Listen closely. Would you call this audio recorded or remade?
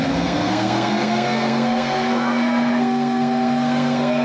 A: remade